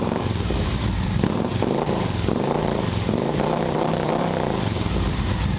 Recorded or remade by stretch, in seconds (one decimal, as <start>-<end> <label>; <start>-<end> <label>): 0.0-5.6 remade